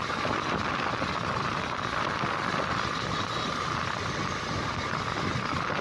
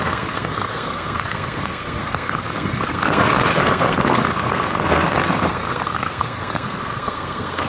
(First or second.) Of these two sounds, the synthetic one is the second